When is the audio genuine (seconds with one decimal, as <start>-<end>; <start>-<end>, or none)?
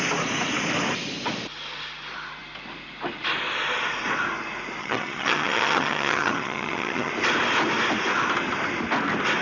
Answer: 0.0-4.8; 7.1-9.4